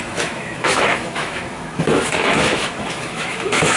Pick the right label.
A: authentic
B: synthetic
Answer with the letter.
B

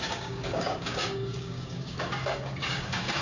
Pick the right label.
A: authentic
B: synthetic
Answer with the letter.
B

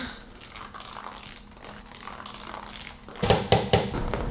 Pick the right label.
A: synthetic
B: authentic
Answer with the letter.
B